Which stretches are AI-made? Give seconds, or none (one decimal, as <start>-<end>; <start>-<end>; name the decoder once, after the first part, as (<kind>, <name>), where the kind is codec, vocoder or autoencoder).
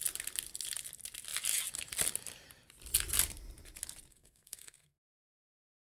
4.1-5.0 (codec, SNAC)